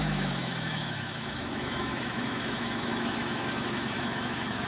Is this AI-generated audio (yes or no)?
yes